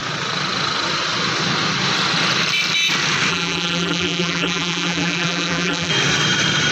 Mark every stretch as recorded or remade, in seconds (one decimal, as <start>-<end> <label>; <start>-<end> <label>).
0.0-3.3 recorded; 3.3-5.9 remade; 5.9-6.7 recorded